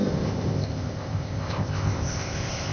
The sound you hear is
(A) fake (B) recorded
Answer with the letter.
A